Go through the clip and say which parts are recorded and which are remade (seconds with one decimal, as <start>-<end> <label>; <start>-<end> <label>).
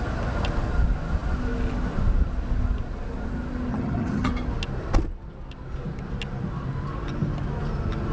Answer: 0.0-3.7 recorded; 3.7-4.3 remade; 4.3-8.1 recorded